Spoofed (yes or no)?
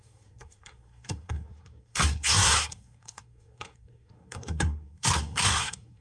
yes